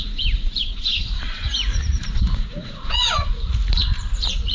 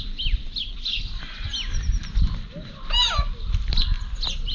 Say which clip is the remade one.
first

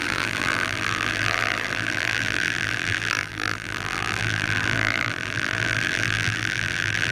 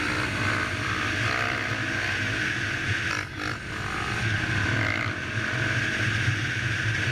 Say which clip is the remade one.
first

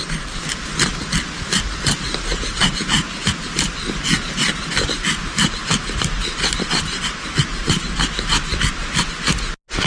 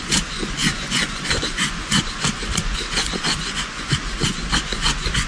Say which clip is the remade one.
second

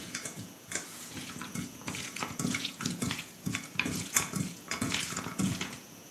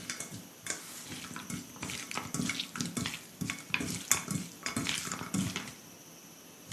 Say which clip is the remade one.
first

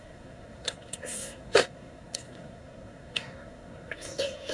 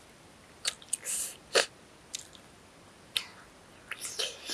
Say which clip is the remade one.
first